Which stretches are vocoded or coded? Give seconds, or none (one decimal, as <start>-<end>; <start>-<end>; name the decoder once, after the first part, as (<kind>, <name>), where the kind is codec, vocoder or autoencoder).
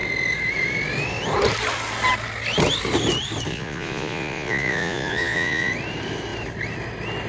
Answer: 3.5-5.7 (vocoder, Vocos)